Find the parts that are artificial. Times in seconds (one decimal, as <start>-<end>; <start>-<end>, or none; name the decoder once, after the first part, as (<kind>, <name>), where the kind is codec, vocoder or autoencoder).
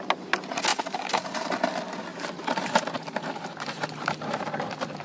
0.7-1.5 (vocoder, BigVGAN v2); 2.1-4.5